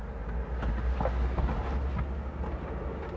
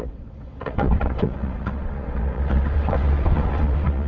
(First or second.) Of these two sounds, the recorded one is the first